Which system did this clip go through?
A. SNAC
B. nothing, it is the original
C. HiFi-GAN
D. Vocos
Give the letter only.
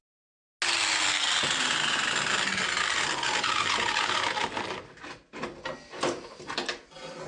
B